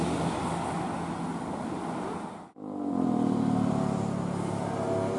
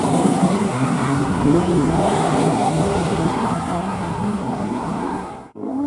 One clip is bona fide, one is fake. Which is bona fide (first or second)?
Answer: first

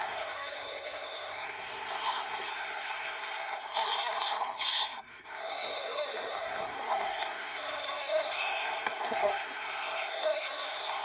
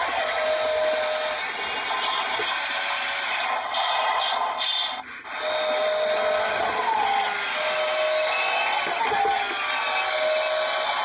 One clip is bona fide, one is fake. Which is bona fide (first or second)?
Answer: second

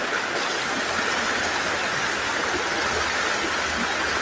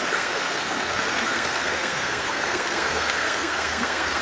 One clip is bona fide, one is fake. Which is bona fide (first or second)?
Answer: first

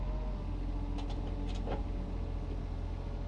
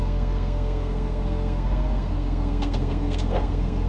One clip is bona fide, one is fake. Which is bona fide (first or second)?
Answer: first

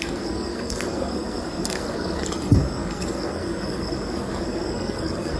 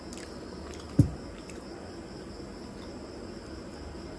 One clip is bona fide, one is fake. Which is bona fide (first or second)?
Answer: second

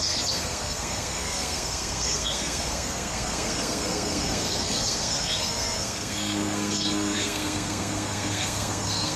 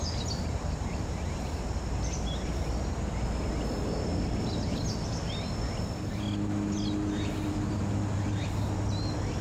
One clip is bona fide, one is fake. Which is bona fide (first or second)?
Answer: second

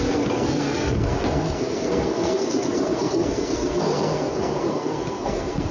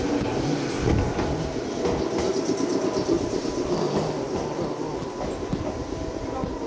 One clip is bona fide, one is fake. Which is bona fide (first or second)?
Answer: second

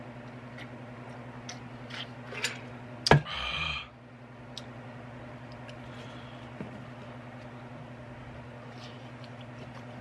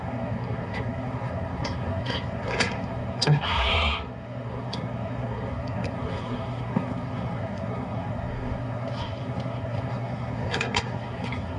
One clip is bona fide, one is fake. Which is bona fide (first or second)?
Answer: first